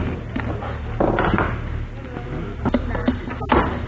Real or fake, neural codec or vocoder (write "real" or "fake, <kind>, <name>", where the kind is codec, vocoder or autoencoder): real